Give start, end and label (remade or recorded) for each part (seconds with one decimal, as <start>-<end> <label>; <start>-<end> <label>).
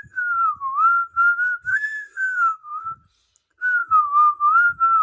0.0-1.7 recorded; 1.7-2.8 remade; 2.8-5.0 recorded